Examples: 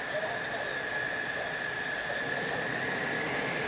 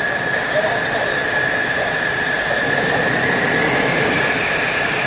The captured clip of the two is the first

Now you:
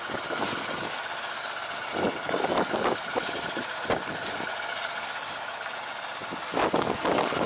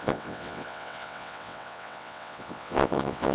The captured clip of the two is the first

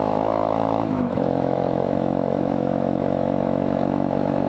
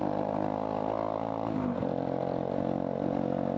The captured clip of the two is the second